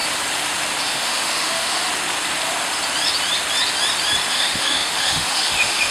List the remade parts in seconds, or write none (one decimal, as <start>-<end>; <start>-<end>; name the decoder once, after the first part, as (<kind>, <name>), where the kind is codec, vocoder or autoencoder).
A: 0.8-1.9 (autoencoder, DAC-VAE); 4.3-5.9